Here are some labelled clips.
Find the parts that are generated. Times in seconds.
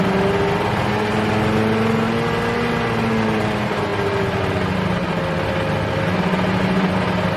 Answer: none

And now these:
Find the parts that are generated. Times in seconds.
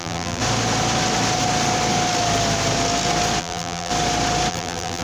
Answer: 0.0-0.4 (vocoder, BigVGAN v2); 3.4-3.9; 4.5-5.0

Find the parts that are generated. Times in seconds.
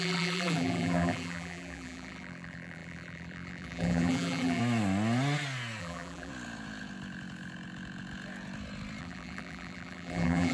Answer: 0.0-4.6 (vocoder, BigVGAN v2); 5.8-6.3; 9.0-10.5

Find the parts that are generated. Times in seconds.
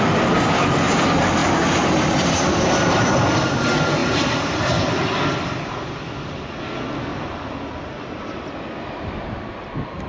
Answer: 1.4-2.6 (vocoder, BigVGAN v2); 4.0-4.6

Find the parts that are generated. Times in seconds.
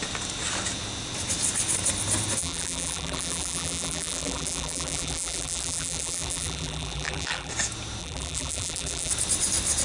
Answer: 2.4-7.5 (vocoder, BigVGAN v2); 8.0-9.1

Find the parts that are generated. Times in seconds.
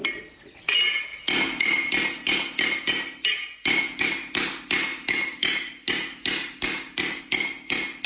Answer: 4.9-7.2 (vocoder, BigVGAN v2)